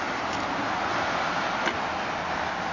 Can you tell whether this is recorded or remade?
recorded